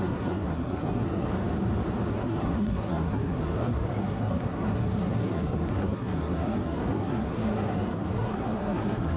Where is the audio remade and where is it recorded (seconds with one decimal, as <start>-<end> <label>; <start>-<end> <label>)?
0.0-1.3 remade; 1.3-2.1 recorded; 2.1-9.2 remade